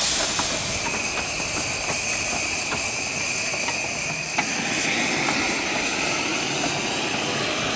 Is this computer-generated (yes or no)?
no